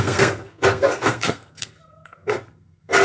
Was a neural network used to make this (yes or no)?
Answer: yes